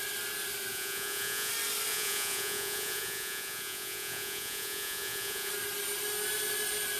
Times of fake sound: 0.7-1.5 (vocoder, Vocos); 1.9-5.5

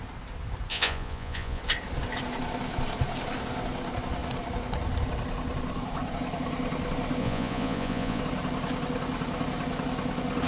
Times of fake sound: 0.7-1.6 (vocoder, Vocos); 7.2-8.2

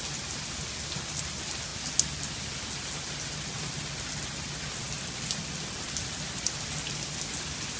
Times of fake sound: none